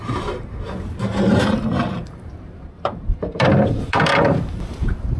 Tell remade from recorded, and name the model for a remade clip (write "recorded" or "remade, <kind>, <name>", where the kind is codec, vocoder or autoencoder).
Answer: remade, vocoder, BigVGAN v2